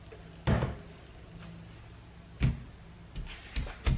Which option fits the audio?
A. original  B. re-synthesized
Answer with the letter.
A